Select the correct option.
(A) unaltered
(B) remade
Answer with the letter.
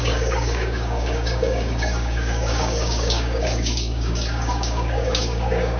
B